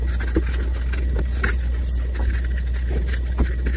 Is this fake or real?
real